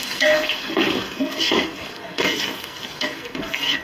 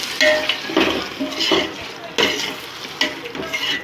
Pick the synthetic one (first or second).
first